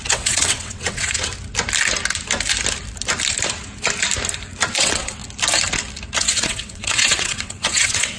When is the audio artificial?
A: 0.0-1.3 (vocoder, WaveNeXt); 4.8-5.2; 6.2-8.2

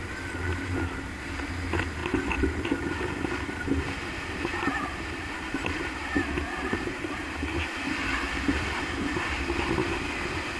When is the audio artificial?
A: 2.0-3.6 (vocoder, BigVGAN v2); 4.7-5.3

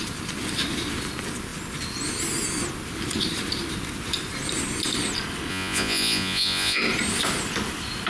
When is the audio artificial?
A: 5.5-6.8 (vocoder, Vocos)

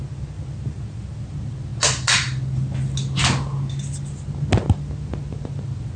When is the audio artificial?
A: none